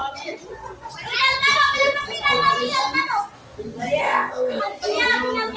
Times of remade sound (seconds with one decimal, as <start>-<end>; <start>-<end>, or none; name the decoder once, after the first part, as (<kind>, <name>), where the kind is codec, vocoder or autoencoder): 4.0-4.6 (codec, ZipCodec)